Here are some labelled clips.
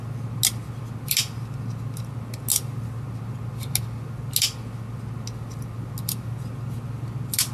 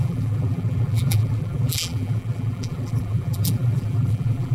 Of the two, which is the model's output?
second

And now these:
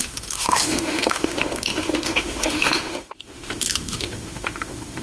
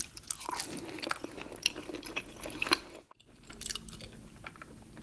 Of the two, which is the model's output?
first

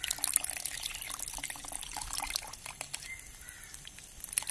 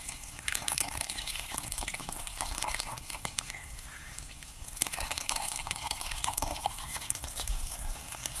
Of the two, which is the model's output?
second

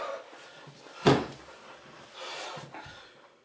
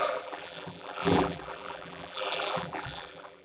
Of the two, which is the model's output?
second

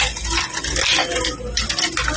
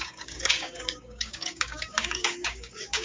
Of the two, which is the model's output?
second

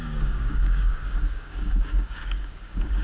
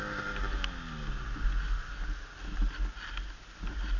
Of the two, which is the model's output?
first